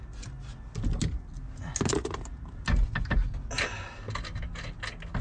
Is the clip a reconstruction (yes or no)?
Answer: no